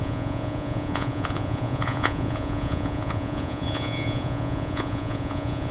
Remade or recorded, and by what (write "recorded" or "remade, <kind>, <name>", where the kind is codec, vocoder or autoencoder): remade, vocoder, Vocos